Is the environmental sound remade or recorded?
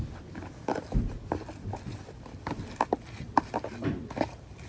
recorded